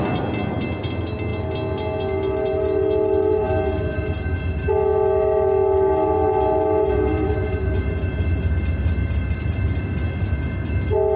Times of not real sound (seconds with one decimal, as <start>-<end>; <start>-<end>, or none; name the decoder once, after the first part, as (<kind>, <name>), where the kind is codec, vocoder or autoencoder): none